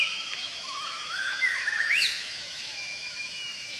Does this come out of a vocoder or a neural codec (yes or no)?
yes